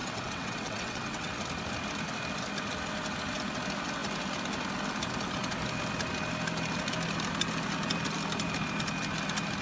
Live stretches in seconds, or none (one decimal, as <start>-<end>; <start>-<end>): 1.3-9.6